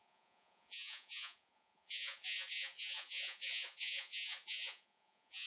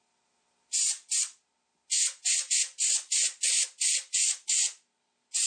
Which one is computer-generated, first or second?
first